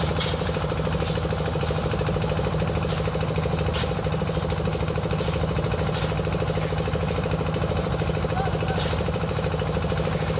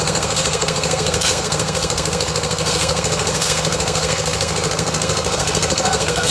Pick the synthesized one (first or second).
second